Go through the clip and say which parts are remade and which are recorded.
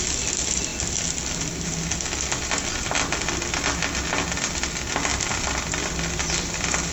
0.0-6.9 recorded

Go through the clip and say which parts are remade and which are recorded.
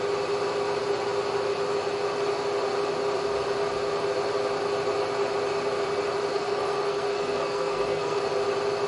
0.0-6.3 recorded; 6.3-8.2 remade; 8.2-8.9 recorded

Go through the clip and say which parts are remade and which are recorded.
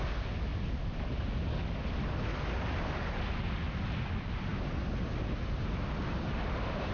0.0-6.9 recorded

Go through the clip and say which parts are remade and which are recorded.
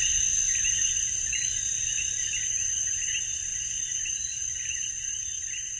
0.0-5.8 recorded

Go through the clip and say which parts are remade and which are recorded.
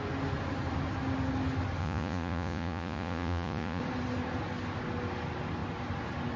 0.0-1.8 recorded; 1.8-3.8 remade; 3.8-6.4 recorded